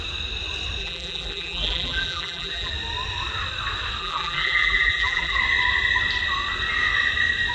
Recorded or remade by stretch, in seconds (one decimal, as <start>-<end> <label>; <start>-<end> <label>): 0.0-0.8 recorded; 0.8-2.7 remade; 2.7-4.0 recorded; 4.0-5.4 remade; 5.4-7.5 recorded